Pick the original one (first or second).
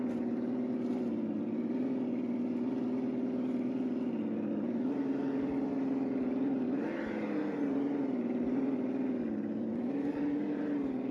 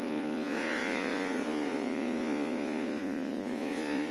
first